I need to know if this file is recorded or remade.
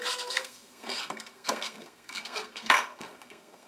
remade